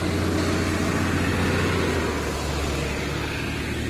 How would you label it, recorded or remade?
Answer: recorded